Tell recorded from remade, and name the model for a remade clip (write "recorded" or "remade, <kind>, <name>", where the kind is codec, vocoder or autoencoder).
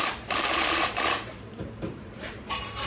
remade, vocoder, BigVGAN v2